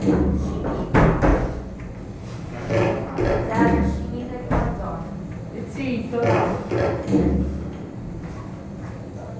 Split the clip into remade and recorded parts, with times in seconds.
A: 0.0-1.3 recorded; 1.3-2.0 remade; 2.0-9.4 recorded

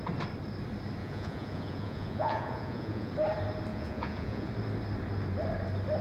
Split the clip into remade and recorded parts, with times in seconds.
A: 0.0-1.0 recorded; 1.0-3.1 remade; 3.1-3.7 recorded; 3.7-4.5 remade; 4.5-6.0 recorded

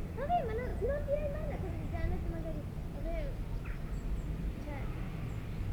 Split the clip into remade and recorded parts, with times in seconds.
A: 0.0-0.7 recorded; 0.7-1.7 remade; 1.7-5.7 recorded

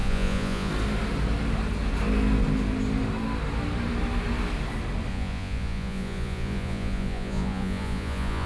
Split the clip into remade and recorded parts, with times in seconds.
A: 0.0-0.7 remade; 0.7-5.1 recorded; 5.1-8.5 remade

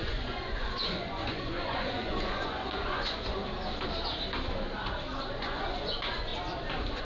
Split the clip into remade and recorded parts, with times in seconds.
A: 0.0-3.4 remade; 3.4-5.4 recorded; 5.4-6.3 remade; 6.3-7.0 recorded

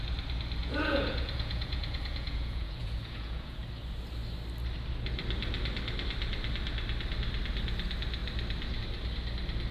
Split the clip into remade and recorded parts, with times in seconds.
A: 0.0-0.6 recorded; 0.6-3.6 remade; 3.6-9.7 recorded